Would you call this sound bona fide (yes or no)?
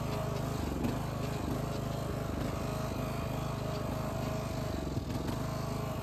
yes